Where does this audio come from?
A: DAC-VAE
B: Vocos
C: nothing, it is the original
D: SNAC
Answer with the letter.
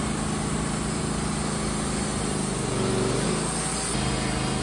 C